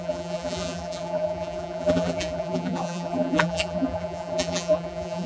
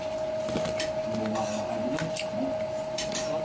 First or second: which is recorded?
second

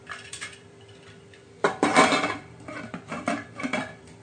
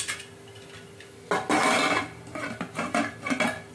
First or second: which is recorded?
second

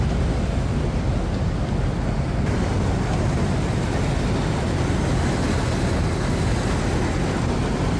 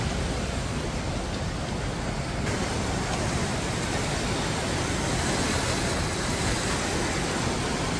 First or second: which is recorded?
first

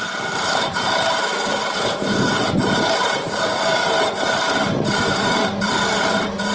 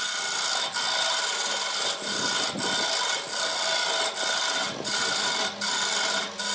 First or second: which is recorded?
second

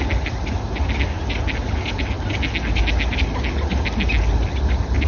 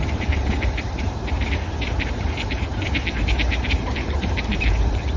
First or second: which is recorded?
first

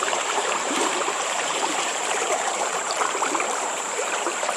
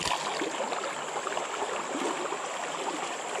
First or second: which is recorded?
second